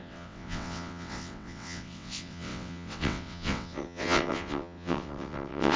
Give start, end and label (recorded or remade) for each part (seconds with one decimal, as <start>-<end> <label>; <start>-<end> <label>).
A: 0.0-5.8 remade